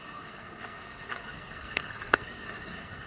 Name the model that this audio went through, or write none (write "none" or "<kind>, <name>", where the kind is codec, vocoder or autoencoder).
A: codec, SNAC